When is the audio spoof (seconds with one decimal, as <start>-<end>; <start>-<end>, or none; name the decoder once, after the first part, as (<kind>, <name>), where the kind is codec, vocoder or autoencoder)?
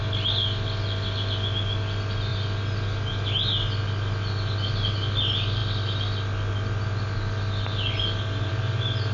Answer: none